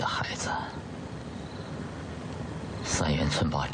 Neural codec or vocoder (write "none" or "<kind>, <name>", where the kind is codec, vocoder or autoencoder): none